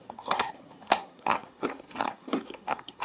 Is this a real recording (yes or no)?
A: no